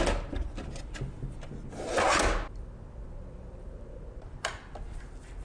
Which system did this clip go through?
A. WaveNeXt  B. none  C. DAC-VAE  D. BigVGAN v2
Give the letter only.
B